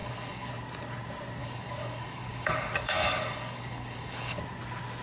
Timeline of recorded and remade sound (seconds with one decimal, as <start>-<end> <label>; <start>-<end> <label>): 0.0-0.5 remade; 0.5-1.4 recorded; 1.4-4.4 remade; 4.4-5.0 recorded